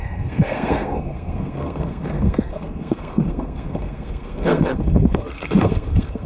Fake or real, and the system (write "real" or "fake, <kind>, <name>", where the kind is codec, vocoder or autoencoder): fake, codec, SNAC